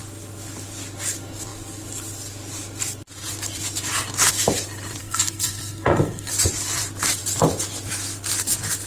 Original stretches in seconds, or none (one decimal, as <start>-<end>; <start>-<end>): 0.0-5.0; 6.3-8.9